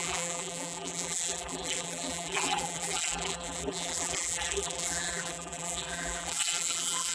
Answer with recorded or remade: remade